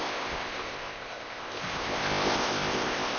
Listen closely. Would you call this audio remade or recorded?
remade